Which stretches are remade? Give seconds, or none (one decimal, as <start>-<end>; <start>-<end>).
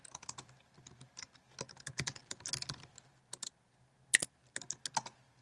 none